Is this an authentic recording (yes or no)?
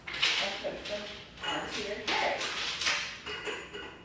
yes